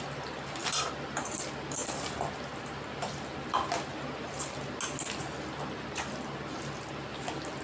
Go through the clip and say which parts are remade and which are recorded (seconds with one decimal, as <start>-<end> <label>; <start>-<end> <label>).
0.0-0.6 recorded; 0.6-1.4 remade; 1.4-7.6 recorded